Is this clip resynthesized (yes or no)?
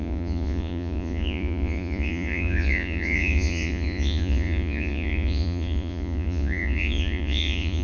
yes